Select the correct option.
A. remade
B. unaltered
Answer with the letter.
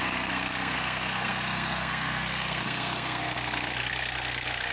A